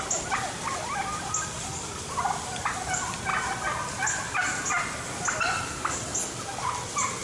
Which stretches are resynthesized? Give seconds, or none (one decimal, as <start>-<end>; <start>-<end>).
none

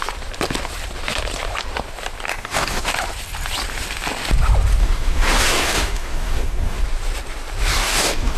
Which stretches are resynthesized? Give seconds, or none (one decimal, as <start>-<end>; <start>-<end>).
2.3-2.9; 4.8-6.8; 7.7-8.4

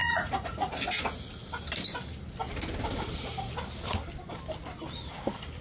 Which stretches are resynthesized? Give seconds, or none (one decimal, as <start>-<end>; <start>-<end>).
0.0-0.7

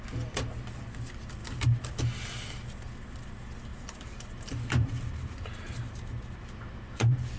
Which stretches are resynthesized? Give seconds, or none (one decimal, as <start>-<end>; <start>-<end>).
1.4-2.0; 3.7-7.4